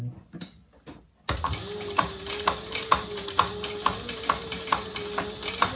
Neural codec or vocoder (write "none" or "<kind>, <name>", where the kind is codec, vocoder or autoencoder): none